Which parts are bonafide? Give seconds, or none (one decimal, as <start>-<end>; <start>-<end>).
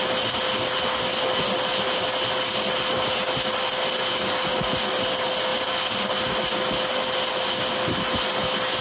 0.0-8.8